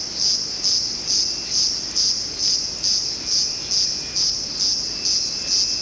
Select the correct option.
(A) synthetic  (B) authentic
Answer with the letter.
B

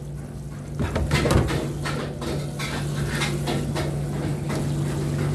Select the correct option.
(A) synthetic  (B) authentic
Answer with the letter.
B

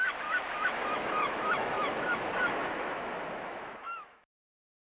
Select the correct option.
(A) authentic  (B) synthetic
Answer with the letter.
B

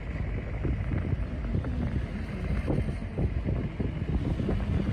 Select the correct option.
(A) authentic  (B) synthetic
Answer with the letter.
A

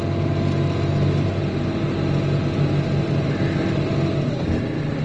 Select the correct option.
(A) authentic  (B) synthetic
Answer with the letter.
A